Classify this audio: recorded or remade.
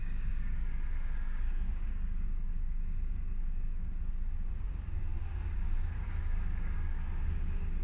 remade